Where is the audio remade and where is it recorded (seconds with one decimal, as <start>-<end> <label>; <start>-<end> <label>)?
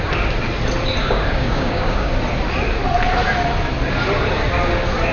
0.0-1.0 recorded; 1.0-2.1 remade; 2.1-5.1 recorded